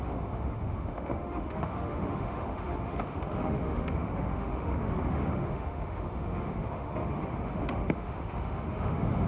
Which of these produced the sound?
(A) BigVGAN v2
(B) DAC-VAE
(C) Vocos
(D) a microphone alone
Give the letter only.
B